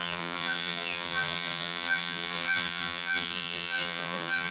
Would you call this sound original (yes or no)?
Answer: no